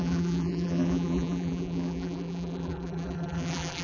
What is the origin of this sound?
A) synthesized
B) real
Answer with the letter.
A